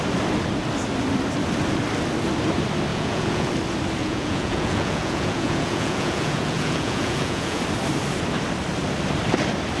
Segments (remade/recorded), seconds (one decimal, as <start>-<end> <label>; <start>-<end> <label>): 0.0-2.9 recorded; 2.9-3.5 remade; 3.5-4.0 recorded; 4.0-7.6 remade; 7.6-9.8 recorded